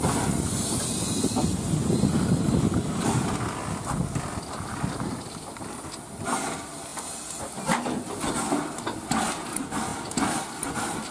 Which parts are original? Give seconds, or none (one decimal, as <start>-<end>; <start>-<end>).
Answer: 0.0-11.1